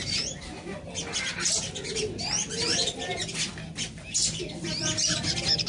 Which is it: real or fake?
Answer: real